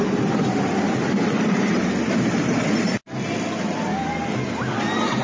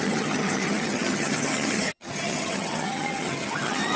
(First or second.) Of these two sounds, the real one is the first